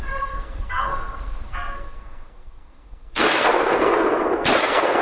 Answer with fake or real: fake